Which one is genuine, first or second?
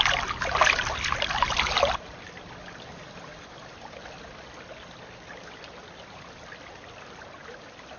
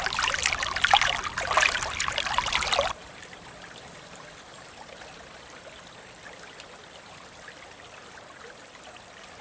first